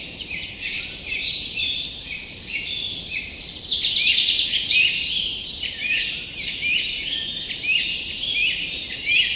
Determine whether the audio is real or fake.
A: fake